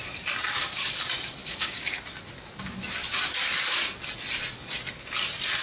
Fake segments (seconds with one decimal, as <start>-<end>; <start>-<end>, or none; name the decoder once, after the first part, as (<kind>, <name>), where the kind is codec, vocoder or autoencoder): 1.4-2.0 (codec, DAC)